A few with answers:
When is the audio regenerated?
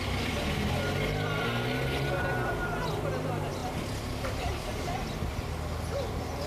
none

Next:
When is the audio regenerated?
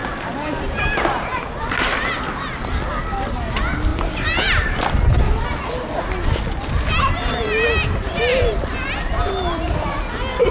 8.3-9.9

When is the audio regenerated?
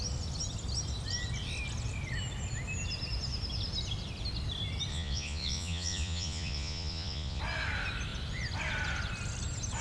4.9-7.4